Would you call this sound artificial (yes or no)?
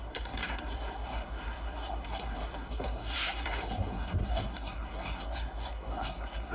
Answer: yes